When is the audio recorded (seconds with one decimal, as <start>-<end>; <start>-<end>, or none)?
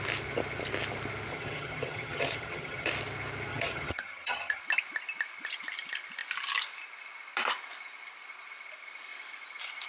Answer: 0.0-1.3; 2.9-3.5; 4.6-9.9